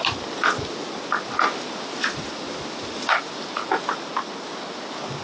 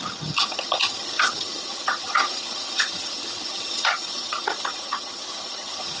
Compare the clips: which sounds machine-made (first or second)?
second